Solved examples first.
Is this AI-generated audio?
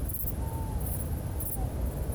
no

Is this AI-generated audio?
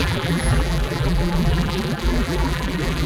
yes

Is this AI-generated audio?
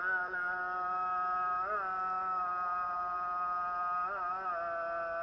no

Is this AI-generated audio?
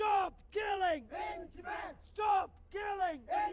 yes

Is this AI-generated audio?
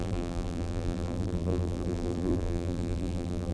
yes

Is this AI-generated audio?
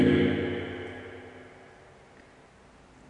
no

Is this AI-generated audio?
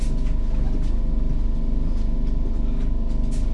no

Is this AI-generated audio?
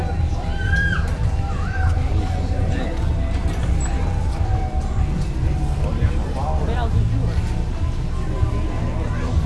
yes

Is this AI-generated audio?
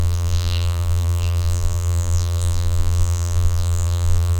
yes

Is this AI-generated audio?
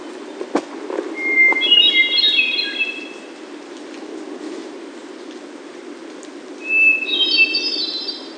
no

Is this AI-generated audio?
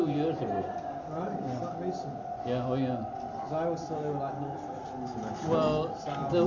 no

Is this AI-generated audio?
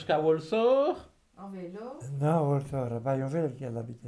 no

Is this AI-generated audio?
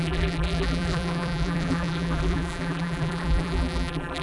yes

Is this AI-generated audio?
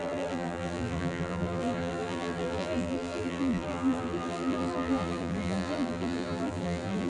yes